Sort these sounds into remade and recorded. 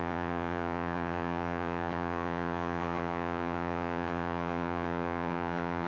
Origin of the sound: remade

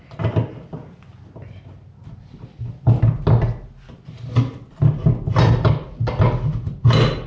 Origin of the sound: recorded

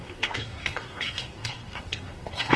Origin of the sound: remade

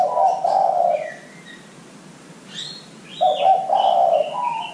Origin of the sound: recorded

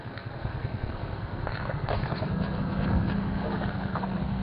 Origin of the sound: remade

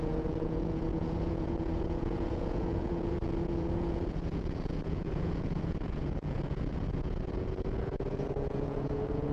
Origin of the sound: remade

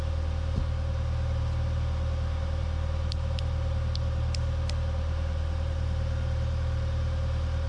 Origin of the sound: recorded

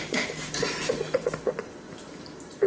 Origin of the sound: remade